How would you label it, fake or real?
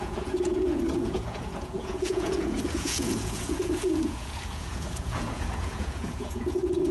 fake